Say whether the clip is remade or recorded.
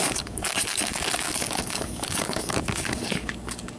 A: remade